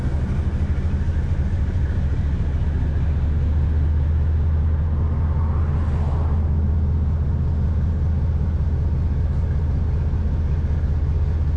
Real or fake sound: real